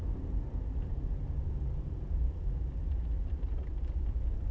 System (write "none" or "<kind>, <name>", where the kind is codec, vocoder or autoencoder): none